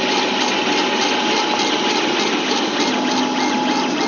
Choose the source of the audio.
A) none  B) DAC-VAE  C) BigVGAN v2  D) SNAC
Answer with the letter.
A